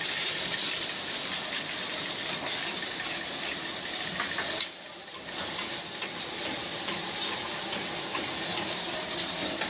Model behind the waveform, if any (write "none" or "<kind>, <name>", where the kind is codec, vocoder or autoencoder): none